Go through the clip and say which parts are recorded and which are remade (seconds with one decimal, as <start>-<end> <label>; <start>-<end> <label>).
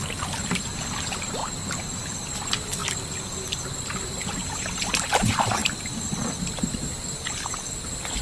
0.0-2.8 recorded; 2.8-4.1 remade; 4.1-5.6 recorded; 5.6-6.3 remade; 6.3-8.2 recorded